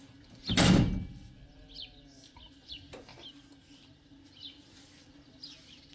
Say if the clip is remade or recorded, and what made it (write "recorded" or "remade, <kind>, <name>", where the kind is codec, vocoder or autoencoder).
recorded